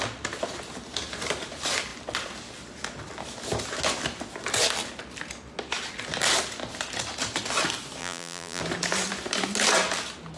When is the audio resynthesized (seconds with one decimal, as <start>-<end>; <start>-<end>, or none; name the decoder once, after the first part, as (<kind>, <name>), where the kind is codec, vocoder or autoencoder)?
8.0-8.6 (vocoder, BigVGAN v2)